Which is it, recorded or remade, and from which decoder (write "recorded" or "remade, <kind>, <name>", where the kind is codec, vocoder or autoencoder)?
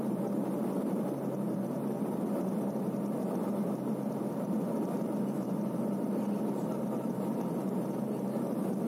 remade, vocoder, BigVGAN v2